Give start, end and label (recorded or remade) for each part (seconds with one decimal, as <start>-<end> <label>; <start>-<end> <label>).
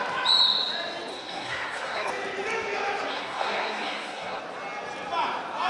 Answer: 0.0-1.1 recorded; 1.1-2.1 remade; 2.1-3.1 recorded; 3.1-4.4 remade; 4.4-5.7 recorded